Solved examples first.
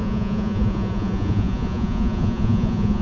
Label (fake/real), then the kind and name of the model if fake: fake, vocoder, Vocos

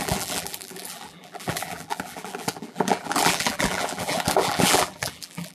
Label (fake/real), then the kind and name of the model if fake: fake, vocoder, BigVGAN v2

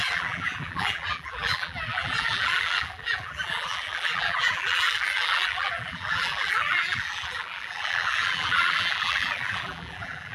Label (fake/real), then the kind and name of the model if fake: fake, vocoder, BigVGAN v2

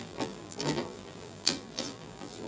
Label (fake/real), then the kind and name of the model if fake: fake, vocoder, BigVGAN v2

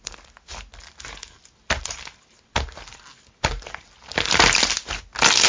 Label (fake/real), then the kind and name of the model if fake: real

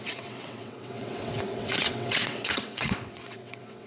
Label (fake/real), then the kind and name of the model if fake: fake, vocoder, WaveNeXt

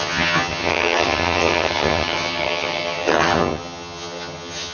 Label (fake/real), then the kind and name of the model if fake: fake, vocoder, HiFi-GAN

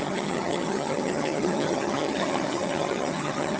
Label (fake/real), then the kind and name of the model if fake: fake, vocoder, HiFi-GAN